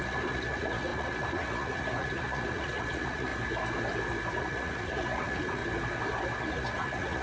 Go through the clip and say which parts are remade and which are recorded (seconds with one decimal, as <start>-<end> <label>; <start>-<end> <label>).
0.0-3.3 remade; 3.3-4.3 recorded; 4.3-5.6 remade; 5.6-6.4 recorded; 6.4-7.2 remade